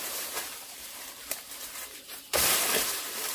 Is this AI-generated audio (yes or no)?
yes